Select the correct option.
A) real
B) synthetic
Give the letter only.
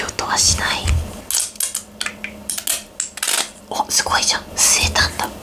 A